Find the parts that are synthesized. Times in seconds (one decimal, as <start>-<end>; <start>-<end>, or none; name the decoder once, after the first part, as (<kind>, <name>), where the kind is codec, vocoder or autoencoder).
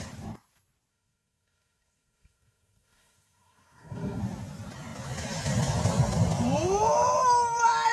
0.9-4.2 (codec, SNAC)